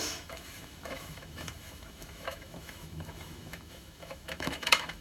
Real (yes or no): no